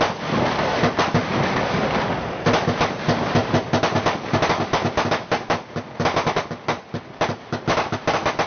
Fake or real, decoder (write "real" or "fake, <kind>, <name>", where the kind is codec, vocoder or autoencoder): real